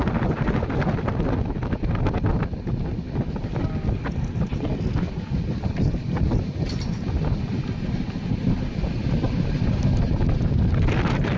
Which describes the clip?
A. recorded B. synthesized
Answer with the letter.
A